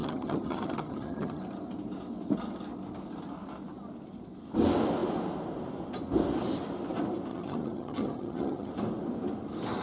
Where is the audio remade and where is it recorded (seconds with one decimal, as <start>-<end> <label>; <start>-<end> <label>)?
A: 0.0-1.4 remade; 1.4-7.3 recorded; 7.3-8.7 remade; 8.7-9.8 recorded